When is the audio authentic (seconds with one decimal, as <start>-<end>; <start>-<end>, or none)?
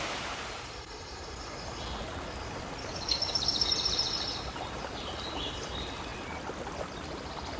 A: 0.0-2.8; 3.7-7.6